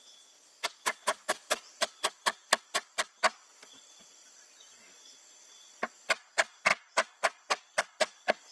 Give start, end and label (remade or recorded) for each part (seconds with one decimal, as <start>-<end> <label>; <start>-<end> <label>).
0.0-2.4 recorded; 2.4-5.9 remade; 5.9-8.5 recorded